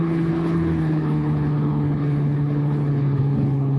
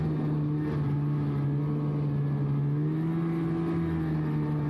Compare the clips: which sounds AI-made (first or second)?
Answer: first